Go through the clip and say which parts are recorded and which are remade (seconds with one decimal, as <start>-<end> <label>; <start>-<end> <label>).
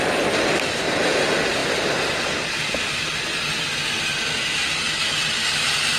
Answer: 0.0-6.0 recorded